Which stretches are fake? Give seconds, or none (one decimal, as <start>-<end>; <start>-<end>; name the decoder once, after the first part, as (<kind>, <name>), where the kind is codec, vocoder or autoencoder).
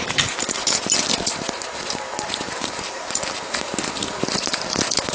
0.0-0.6 (vocoder, BigVGAN v2); 2.4-3.7